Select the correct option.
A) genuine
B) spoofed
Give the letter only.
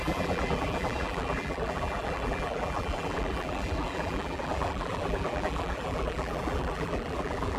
B